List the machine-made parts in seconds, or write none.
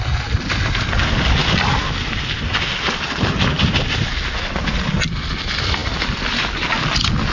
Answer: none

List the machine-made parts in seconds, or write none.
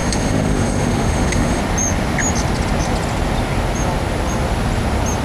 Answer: 0.0-1.6 (autoencoder, DAC-VAE)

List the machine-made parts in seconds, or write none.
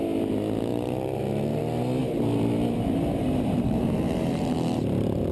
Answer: 0.7-1.6 (vocoder, BigVGAN v2); 2.0-5.3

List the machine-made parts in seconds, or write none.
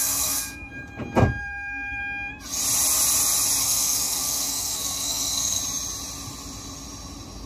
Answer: 0.0-0.7 (codec, SNAC); 1.4-2.0; 3.6-5.6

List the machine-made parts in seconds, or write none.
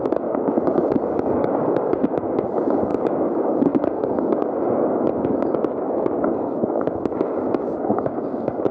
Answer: 0.0-8.7 (codec, DAC)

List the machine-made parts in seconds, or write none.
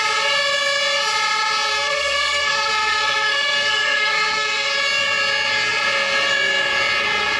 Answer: 1.7-4.7 (codec, SNAC)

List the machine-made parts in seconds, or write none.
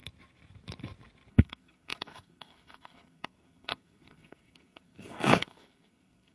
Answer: 1.3-6.3 (codec, SNAC)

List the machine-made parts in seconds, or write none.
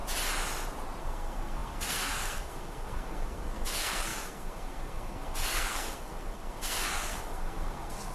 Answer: 1.0-8.1 (codec, SNAC)